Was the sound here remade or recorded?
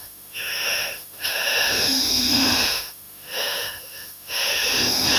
remade